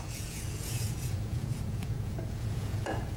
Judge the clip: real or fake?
fake